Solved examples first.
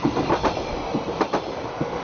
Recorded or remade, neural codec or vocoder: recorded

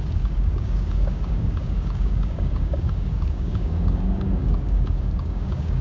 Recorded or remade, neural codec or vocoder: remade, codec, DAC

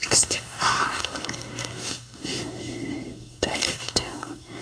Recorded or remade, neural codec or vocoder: remade, codec, SNAC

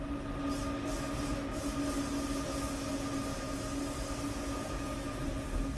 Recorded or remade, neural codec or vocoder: recorded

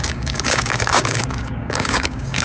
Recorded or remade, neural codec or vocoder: remade, codec, DAC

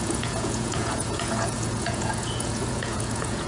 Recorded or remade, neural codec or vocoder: remade, vocoder, Vocos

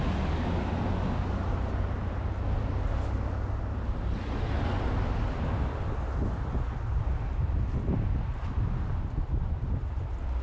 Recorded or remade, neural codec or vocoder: recorded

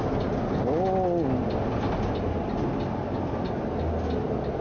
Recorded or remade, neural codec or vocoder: recorded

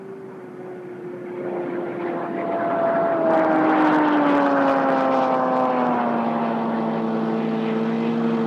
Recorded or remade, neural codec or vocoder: recorded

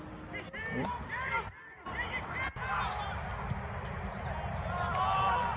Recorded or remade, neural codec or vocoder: recorded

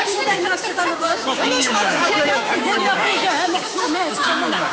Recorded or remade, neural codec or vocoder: remade, codec, DAC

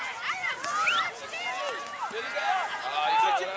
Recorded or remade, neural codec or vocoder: recorded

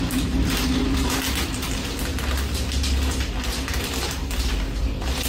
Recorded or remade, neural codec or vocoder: recorded